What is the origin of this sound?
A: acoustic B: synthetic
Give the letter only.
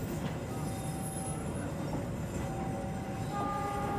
A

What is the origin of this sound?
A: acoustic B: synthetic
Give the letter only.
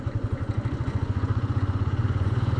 B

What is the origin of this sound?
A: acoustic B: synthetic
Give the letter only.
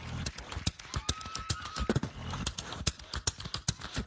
A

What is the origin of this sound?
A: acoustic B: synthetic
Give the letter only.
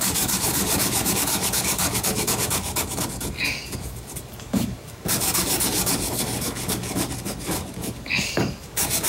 B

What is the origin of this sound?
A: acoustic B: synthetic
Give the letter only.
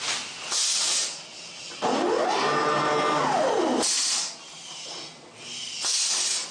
A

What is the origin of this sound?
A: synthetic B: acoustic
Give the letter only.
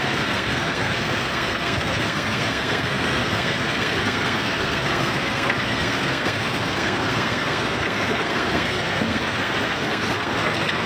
A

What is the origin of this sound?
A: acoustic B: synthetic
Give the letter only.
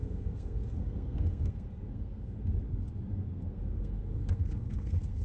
B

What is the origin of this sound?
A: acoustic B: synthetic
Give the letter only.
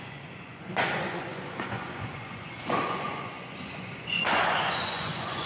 B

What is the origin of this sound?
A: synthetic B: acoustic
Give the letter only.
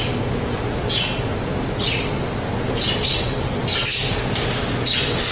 B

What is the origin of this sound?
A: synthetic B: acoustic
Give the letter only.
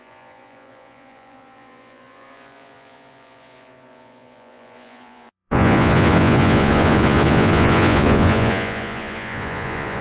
A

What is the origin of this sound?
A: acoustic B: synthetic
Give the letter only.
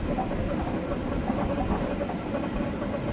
B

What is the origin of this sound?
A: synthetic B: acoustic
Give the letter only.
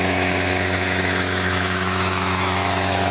A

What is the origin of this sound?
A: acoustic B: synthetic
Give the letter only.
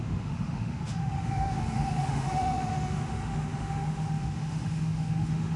B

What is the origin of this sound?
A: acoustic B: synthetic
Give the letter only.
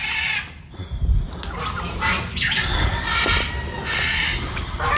A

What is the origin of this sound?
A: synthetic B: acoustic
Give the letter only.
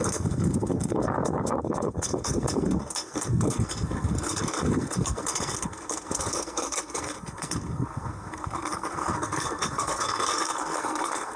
A